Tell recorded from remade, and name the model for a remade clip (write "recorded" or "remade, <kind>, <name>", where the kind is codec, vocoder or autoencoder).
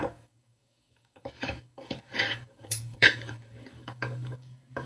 remade, codec, DAC